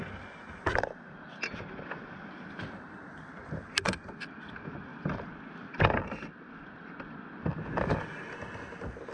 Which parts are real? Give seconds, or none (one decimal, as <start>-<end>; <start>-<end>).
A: 0.0-9.1